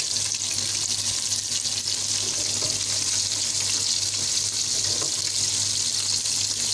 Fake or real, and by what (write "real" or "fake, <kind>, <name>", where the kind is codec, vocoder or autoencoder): real